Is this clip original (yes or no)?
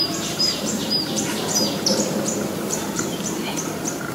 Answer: no